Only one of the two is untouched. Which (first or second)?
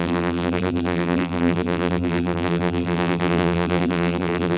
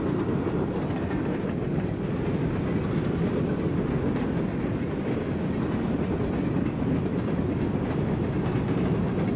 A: second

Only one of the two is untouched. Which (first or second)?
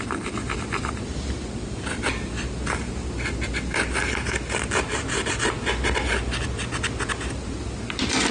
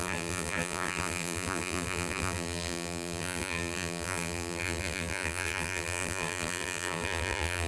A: first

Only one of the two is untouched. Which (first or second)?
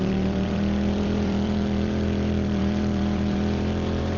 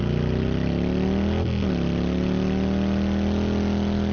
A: second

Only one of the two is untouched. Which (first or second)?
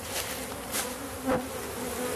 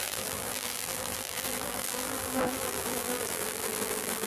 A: first